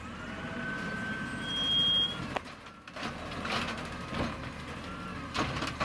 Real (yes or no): yes